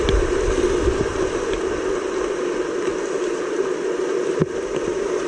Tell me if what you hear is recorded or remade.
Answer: recorded